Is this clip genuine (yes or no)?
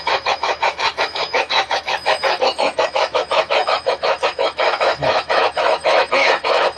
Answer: no